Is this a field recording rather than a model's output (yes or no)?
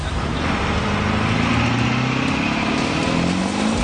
yes